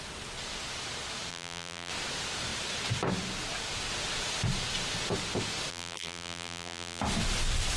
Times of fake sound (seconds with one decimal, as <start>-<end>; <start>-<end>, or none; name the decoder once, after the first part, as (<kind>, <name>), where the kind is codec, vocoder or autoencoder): 1.3-1.9 (vocoder, BigVGAN v2); 5.7-7.0